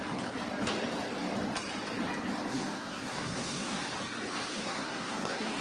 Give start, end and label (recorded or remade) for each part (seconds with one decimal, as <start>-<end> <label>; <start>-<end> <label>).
0.0-2.5 recorded; 2.5-3.8 remade; 3.8-4.5 recorded; 4.5-5.6 remade